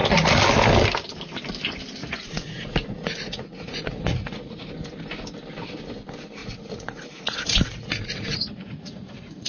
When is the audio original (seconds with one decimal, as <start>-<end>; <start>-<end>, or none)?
0.0-2.0; 4.7-6.4